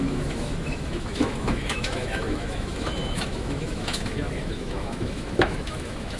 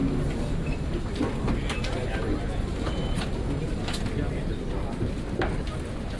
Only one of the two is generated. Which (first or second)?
first